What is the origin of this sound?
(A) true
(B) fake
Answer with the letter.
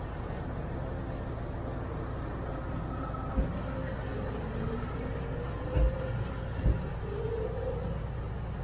A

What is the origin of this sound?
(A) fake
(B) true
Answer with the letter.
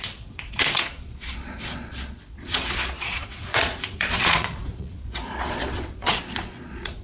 A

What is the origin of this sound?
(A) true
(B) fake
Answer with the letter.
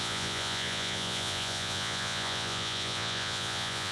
B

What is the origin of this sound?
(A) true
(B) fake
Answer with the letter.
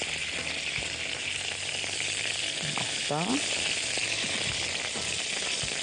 A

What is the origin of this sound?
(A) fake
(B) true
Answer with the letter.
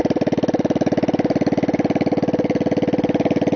B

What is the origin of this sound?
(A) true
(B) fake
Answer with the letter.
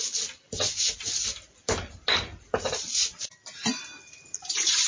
A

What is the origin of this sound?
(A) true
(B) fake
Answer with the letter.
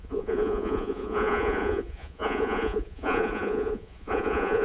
B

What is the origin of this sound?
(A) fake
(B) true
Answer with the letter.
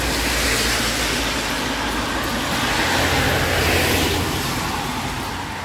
B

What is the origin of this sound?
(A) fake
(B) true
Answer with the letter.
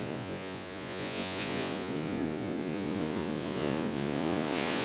A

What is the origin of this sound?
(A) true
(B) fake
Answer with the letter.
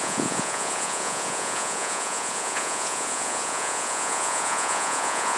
B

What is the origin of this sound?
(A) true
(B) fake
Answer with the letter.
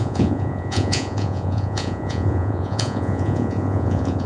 B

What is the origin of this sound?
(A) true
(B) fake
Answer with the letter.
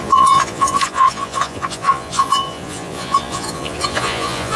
B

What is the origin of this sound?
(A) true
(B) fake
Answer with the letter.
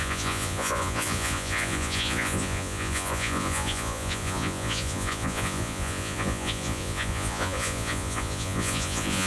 B